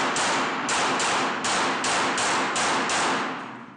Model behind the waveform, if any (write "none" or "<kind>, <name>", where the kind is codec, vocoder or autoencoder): none